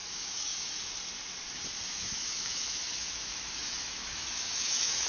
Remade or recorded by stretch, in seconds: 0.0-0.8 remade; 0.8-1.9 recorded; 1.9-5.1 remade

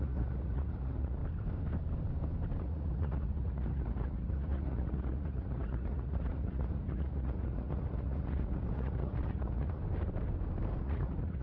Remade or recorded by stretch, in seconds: 0.0-1.2 remade; 1.2-2.6 recorded; 2.6-9.8 remade; 9.8-10.8 recorded; 10.8-11.4 remade

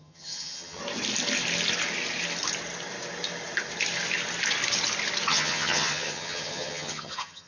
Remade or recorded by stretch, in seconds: 0.0-0.8 remade; 0.8-5.3 recorded; 5.3-7.5 remade

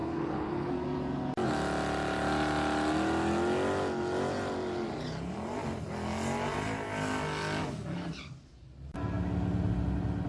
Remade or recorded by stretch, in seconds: 0.0-0.7 remade; 0.7-10.3 recorded

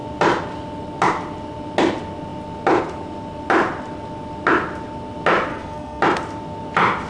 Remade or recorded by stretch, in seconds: 0.0-5.5 recorded; 5.5-6.0 remade; 6.0-7.1 recorded